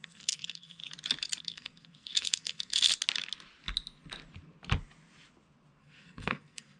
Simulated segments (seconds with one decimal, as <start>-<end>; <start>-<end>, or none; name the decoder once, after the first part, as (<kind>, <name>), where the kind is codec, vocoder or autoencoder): 0.0-0.8 (codec, SNAC); 1.4-2.9; 5.8-6.8